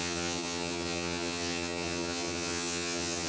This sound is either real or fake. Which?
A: fake